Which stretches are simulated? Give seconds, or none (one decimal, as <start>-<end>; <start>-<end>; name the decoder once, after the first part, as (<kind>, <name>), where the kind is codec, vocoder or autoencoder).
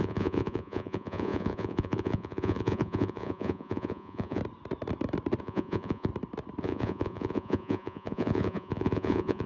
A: 0.0-4.4 (vocoder, Vocos); 5.4-6.1; 6.6-9.5